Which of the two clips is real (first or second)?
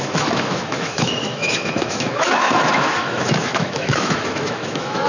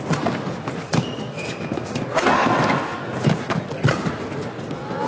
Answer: second